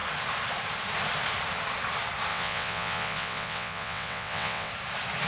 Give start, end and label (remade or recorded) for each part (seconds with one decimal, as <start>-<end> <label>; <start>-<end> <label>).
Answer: 0.0-2.3 recorded; 2.3-4.7 remade; 4.7-5.3 recorded

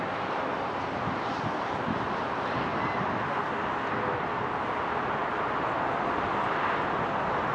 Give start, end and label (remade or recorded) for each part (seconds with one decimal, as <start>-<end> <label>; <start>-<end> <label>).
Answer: 0.0-7.5 recorded

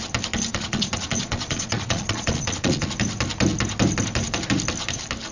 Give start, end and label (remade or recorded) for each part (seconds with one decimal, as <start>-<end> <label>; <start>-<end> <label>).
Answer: 0.0-0.5 recorded; 0.5-2.9 remade; 2.9-5.3 recorded

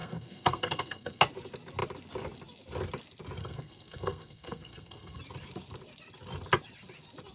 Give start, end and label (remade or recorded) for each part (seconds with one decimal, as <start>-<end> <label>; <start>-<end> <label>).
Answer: 0.0-1.2 remade; 1.2-3.4 recorded; 3.4-5.2 remade; 5.2-7.3 recorded